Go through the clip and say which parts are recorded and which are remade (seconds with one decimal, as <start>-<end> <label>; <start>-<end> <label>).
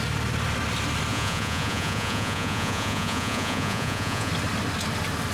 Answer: 0.0-1.1 recorded; 1.1-4.3 remade; 4.3-5.3 recorded